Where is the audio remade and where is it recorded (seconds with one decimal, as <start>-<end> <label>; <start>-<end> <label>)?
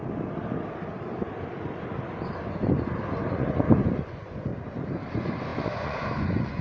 0.0-3.3 recorded; 3.3-4.5 remade; 4.5-5.1 recorded; 5.1-6.6 remade